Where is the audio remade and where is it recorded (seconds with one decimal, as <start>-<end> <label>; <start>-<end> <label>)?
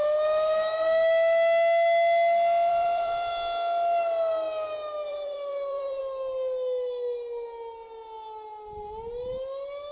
0.0-2.7 recorded; 2.7-3.3 remade; 3.3-5.1 recorded; 5.1-6.0 remade; 6.0-9.9 recorded